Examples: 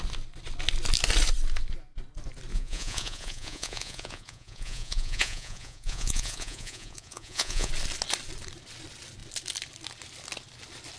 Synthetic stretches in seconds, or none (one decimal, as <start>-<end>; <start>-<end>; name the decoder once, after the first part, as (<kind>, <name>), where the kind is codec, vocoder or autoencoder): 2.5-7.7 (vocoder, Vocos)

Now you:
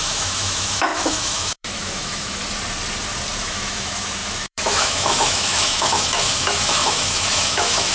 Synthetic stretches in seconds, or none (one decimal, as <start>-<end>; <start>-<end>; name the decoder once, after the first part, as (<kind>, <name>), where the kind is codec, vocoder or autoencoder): 0.0-2.4 (autoencoder, DAC-VAE); 3.4-7.9

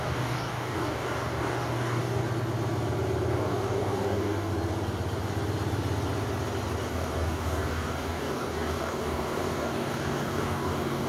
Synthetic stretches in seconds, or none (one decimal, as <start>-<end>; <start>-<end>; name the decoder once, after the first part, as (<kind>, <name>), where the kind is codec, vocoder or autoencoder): 0.0-2.2 (codec, DAC); 3.3-4.5; 6.9-11.1

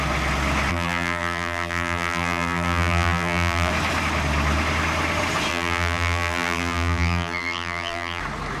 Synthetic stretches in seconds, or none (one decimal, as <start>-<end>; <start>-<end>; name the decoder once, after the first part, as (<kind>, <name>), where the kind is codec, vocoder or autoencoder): 0.7-3.7 (vocoder, BigVGAN v2); 5.5-8.2

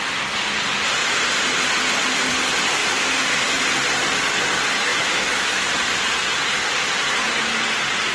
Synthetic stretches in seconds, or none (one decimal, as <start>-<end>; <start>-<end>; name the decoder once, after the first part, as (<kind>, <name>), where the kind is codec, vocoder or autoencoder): 4.9-5.7 (autoencoder, DAC-VAE)